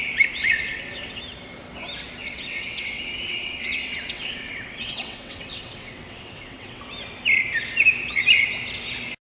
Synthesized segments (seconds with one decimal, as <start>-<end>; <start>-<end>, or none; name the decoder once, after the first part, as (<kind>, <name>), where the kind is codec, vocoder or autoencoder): 0.4-1.2 (vocoder, WaveNeXt); 2.2-6.8